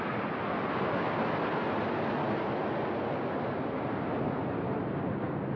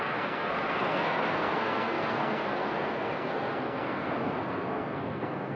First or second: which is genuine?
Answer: first